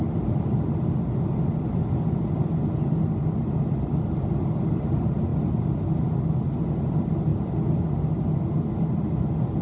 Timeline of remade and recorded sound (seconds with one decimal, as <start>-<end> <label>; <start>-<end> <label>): 0.0-9.6 recorded